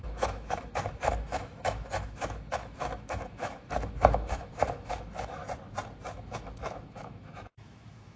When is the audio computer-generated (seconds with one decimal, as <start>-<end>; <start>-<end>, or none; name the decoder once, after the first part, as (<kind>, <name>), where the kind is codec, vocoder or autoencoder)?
0.0-5.4 (autoencoder, DAC-VAE); 6.1-8.2